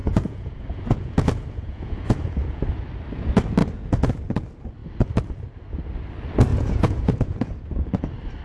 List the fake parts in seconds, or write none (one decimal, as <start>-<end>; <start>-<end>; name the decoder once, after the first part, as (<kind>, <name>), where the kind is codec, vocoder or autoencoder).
0.0-2.6 (vocoder, Vocos); 3.6-4.2; 6.5-7.9